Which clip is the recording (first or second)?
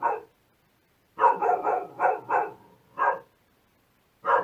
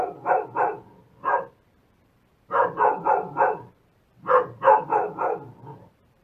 first